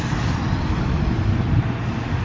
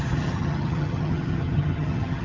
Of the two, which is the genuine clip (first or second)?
first